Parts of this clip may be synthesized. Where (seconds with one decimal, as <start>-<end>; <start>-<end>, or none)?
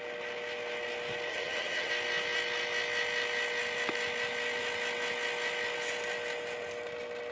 1.3-1.9